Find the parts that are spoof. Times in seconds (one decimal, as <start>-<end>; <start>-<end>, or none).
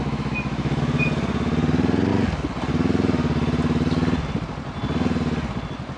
0.0-0.8